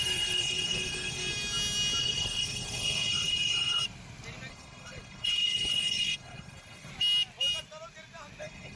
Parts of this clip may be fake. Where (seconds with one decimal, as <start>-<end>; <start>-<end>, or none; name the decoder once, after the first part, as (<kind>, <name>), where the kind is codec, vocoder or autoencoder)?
0.0-1.2 (codec, HILCodec); 2.0-3.8; 4.5-6.9; 8.4-8.8